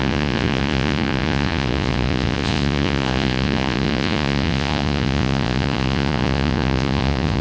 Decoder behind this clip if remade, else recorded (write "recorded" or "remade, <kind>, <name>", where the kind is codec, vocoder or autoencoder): remade, vocoder, Vocos